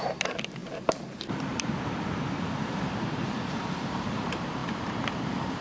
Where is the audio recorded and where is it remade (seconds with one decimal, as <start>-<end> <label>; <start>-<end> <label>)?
0.0-5.6 remade